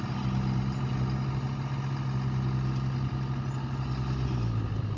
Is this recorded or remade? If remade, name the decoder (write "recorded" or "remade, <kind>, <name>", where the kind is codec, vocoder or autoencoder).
recorded